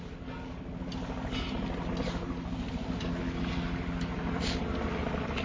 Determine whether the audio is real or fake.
real